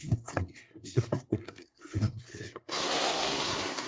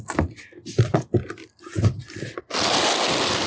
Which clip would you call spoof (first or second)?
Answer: first